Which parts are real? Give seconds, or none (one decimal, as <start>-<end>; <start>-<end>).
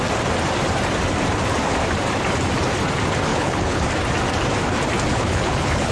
0.0-3.3; 3.9-5.1